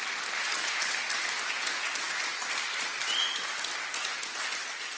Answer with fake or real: real